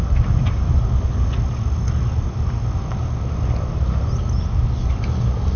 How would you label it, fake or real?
real